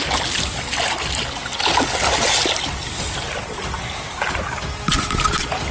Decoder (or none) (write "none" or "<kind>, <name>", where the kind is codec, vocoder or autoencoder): none